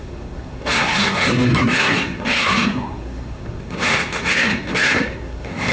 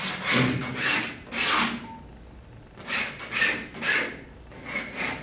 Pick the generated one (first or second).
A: first